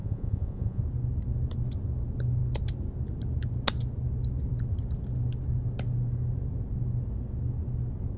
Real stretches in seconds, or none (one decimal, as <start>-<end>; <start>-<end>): 0.8-8.2